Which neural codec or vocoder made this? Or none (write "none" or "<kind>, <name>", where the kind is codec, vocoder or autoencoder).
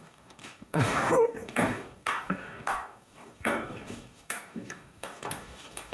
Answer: codec, DAC